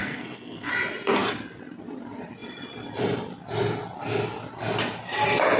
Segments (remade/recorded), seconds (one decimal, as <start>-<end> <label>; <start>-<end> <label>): 0.0-0.7 remade; 0.7-5.6 recorded